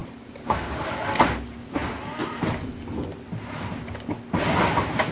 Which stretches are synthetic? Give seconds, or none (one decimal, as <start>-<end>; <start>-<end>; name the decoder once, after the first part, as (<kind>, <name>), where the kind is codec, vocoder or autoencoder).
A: 0.0-1.0 (vocoder, BigVGAN v2)